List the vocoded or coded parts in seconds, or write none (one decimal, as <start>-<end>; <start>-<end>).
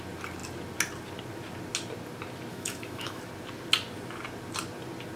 2.5-3.2